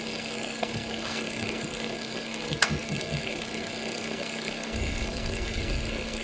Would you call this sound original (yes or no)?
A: no